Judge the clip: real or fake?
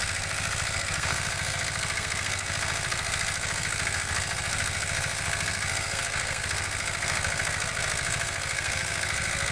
fake